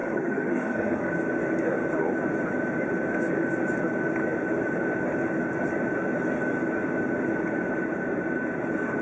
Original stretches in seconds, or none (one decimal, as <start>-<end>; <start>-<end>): 1.1-9.0